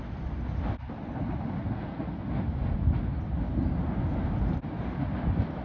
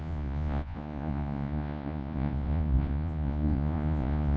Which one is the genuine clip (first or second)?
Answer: first